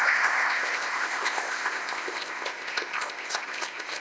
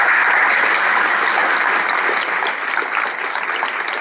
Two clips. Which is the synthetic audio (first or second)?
first